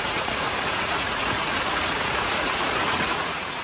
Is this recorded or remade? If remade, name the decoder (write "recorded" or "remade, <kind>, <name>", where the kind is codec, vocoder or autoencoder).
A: remade, vocoder, Vocos